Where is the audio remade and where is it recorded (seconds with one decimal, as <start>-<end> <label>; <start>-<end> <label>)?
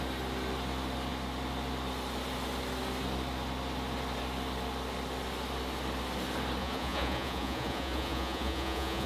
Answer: 0.0-6.6 recorded; 6.6-9.1 remade